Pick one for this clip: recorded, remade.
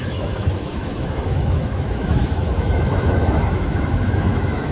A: remade